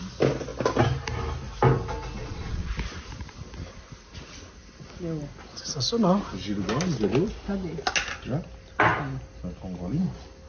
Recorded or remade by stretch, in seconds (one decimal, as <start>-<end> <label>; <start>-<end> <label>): 0.0-2.2 recorded; 2.2-2.7 remade; 2.7-10.5 recorded

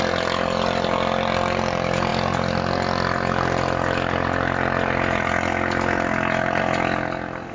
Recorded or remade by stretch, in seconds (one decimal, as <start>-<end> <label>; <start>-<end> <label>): 0.0-7.5 recorded

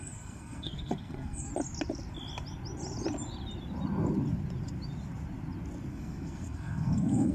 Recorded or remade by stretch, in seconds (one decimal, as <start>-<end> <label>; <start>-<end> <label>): 0.0-1.5 remade; 1.5-5.9 recorded; 5.9-7.3 remade

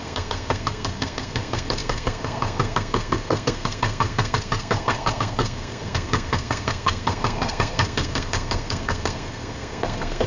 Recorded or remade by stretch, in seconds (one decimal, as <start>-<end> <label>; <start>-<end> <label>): 0.0-10.3 remade

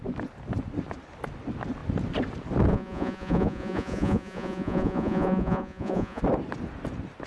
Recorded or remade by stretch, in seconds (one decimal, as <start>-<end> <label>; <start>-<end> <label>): 0.0-2.7 recorded; 2.7-6.2 remade; 6.2-7.3 recorded

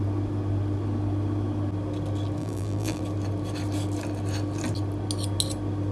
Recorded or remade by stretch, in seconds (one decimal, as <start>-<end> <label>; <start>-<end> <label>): 0.0-2.4 recorded; 2.4-3.0 remade; 3.0-5.9 recorded

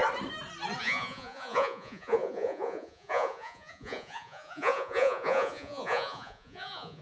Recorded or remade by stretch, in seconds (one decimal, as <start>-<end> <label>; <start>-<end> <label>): 0.0-0.8 recorded; 0.8-7.0 remade